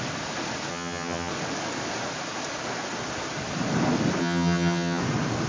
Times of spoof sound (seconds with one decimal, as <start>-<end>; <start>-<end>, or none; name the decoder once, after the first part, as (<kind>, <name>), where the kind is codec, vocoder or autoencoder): 0.7-1.3 (vocoder, HiFi-GAN); 4.2-5.0